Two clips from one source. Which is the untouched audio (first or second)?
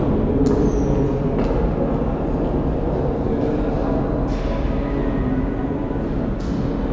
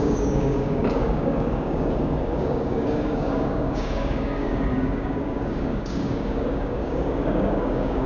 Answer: first